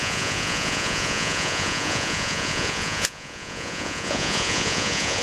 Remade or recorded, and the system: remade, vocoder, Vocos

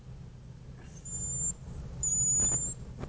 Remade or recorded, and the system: recorded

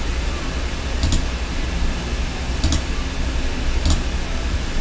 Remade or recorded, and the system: recorded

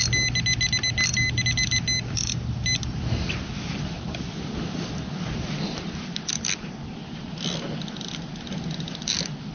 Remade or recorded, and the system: recorded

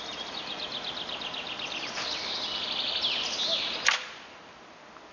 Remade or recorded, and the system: recorded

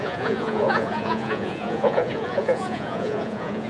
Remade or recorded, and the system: remade, vocoder, Vocos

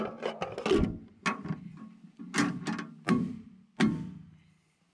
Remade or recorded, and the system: recorded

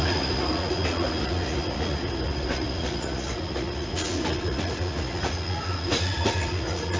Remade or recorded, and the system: remade, vocoder, Vocos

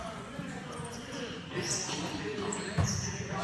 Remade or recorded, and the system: remade, vocoder, Vocos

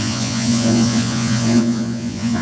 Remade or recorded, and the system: remade, vocoder, Vocos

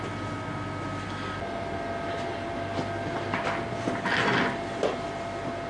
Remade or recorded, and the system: recorded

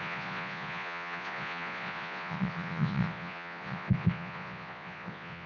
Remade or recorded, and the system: remade, vocoder, Vocos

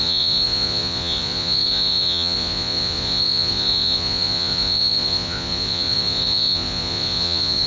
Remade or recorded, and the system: remade, vocoder, Vocos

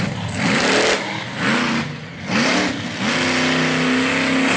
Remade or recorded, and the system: recorded